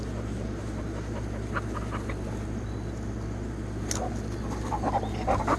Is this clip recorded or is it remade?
recorded